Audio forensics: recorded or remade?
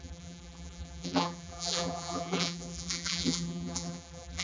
remade